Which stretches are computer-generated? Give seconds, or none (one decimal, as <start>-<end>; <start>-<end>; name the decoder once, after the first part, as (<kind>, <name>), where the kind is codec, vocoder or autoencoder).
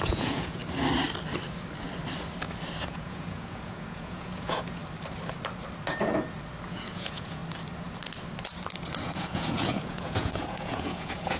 0.0-0.6 (vocoder, Vocos); 2.8-4.8; 6.7-7.4; 9.0-11.4